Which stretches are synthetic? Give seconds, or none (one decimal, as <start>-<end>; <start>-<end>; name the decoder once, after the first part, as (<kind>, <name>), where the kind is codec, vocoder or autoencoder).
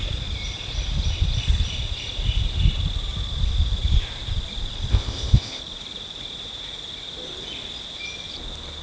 4.9-5.6 (codec, ZipCodec)